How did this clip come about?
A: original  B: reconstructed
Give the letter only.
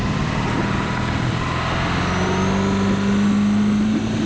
A